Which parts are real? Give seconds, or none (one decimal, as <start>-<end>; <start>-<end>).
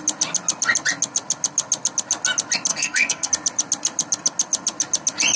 0.0-2.7; 3.3-5.4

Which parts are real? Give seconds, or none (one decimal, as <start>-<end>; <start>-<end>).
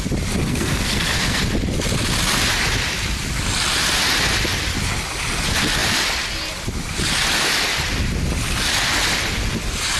0.0-0.4; 1.4-10.0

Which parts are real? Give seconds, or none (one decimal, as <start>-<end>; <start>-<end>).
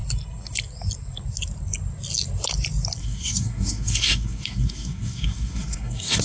0.0-3.0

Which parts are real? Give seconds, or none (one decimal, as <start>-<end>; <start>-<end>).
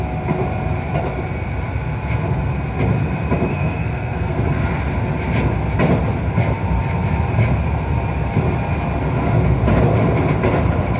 0.0-3.5; 4.4-11.0